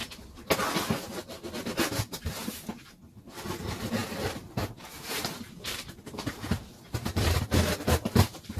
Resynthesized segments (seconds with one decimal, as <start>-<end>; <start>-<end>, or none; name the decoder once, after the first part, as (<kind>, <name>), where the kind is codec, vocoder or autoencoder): 2.1-2.7 (vocoder, BigVGAN v2); 3.6-8.6